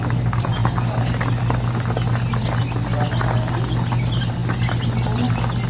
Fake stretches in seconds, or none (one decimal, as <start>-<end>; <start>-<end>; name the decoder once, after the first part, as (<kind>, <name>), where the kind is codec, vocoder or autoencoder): none